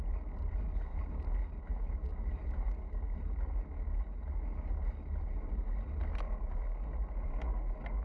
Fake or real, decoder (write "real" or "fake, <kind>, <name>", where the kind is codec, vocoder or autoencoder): real